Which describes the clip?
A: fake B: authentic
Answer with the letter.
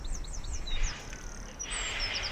A